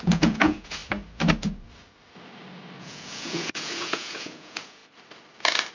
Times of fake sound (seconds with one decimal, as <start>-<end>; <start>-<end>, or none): 0.0-0.8; 2.8-4.8

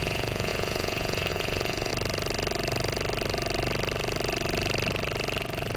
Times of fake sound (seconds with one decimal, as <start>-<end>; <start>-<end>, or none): 0.0-1.9

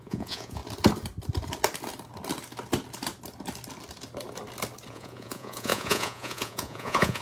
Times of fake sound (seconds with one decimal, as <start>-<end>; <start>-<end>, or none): 0.0-0.6; 4.9-7.2

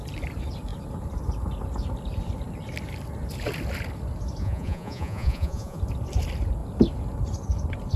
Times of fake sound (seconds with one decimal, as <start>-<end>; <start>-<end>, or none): 4.4-5.8

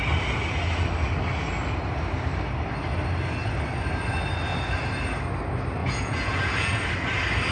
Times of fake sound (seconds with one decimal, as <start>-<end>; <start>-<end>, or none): 5.8-6.9

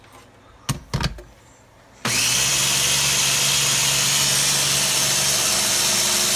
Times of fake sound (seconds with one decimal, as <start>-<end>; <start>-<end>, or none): none

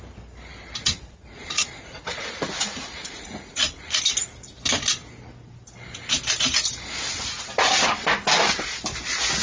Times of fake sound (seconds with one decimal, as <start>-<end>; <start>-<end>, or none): 0.8-4.0

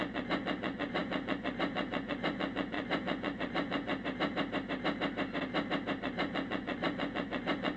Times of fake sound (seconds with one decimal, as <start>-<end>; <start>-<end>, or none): 0.0-3.9; 6.0-7.8